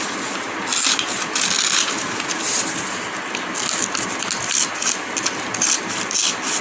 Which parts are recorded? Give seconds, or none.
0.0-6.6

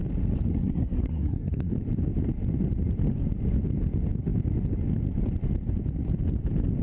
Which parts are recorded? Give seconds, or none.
0.0-0.5; 1.7-6.8